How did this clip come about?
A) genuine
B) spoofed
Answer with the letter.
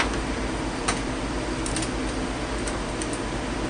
A